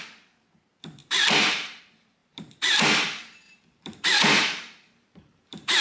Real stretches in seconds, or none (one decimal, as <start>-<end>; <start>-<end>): 0.0-1.0; 1.8-2.2